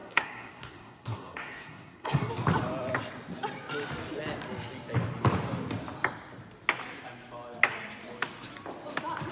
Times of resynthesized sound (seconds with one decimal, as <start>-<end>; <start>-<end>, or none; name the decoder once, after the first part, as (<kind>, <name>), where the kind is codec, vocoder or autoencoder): 0.0-2.3 (codec, SNAC)